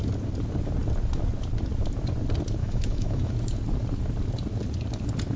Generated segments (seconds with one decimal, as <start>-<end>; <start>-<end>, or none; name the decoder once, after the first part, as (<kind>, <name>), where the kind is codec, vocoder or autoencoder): 2.6-3.3 (autoencoder, DAC-VAE)